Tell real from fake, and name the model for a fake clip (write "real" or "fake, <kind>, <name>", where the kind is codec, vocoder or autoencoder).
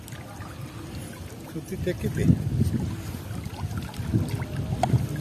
real